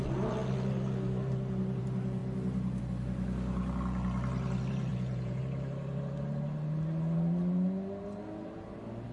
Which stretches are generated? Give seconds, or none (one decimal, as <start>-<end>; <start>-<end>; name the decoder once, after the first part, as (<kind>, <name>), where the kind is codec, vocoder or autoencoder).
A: 4.9-5.4 (vocoder, Vocos)